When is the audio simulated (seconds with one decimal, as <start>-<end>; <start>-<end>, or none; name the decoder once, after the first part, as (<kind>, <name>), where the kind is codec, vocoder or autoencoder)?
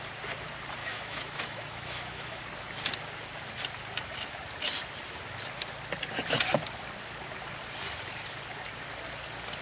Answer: 0.8-2.4 (autoencoder, DAC-VAE)